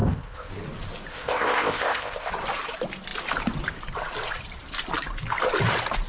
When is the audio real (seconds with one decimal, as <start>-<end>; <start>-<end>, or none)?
0.5-1.1; 2.3-6.1